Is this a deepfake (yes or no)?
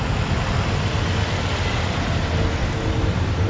no